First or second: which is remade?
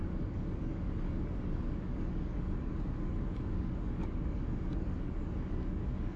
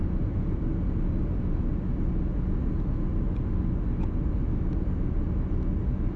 first